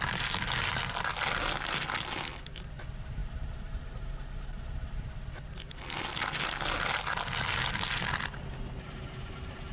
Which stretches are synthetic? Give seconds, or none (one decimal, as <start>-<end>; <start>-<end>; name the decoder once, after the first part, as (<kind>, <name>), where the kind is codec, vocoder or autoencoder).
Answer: none